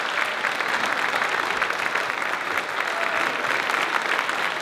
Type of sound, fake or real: real